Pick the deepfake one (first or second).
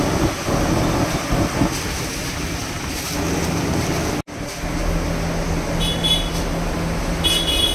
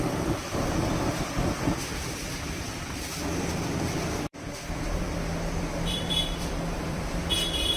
second